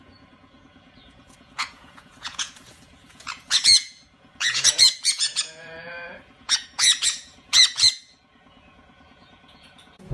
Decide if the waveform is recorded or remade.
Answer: remade